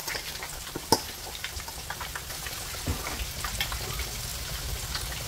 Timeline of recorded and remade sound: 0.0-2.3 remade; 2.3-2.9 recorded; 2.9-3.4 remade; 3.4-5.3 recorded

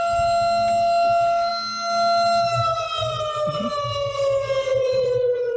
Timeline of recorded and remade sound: 0.0-4.7 recorded; 4.7-5.6 remade

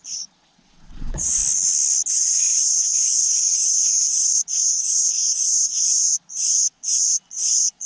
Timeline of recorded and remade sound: 0.0-1.4 remade; 1.4-2.1 recorded; 2.1-7.9 remade